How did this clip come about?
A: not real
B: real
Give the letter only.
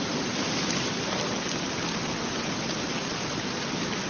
B